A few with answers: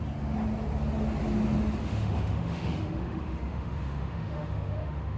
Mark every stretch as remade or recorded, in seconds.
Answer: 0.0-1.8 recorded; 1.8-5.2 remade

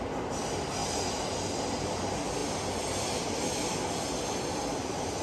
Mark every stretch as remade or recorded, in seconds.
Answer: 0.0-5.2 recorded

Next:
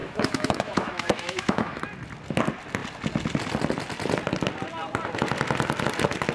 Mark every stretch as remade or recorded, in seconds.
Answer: 0.0-1.8 remade; 1.8-6.3 recorded

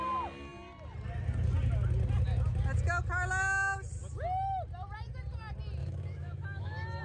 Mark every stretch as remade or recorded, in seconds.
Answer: 0.0-5.8 recorded; 5.8-7.0 remade